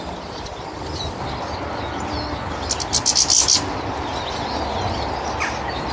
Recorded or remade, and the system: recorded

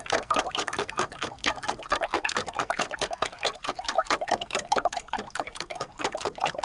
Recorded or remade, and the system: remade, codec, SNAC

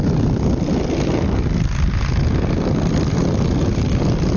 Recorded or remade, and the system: recorded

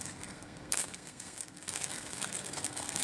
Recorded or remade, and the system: remade, codec, SNAC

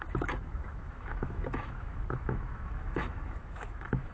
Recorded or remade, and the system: remade, autoencoder, DAC-VAE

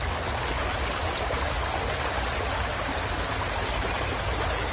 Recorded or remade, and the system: recorded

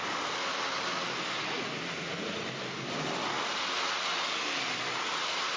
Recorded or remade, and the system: recorded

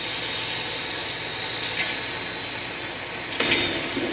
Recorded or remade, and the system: recorded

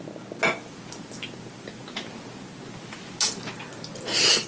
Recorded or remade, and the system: recorded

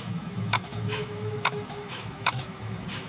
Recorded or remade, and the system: remade, autoencoder, DAC-VAE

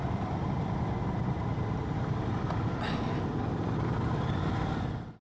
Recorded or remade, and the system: recorded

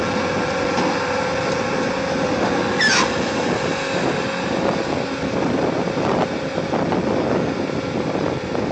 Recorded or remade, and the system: recorded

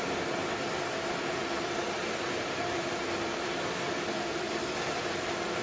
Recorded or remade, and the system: recorded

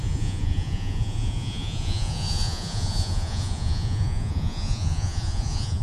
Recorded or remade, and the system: remade, vocoder, Vocos